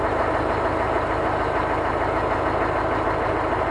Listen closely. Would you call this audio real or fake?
real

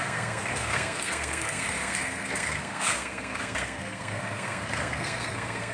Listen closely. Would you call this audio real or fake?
fake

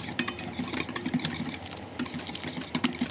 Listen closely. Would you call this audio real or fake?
real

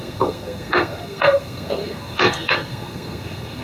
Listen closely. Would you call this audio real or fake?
fake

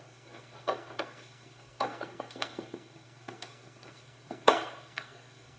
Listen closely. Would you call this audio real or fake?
fake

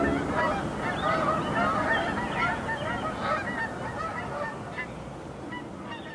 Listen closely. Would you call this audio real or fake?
real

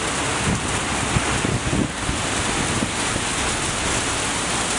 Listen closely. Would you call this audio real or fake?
real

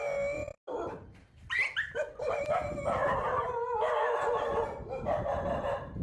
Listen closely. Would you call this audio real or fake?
real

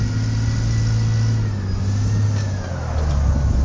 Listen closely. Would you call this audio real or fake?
real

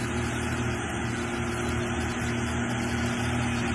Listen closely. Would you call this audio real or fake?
real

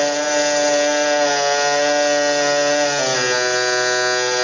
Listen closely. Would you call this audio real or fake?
real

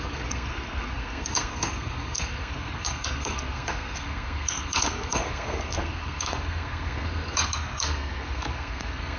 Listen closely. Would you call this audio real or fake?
fake